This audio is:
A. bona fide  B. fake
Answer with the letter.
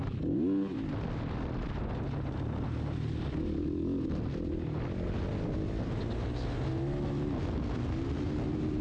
A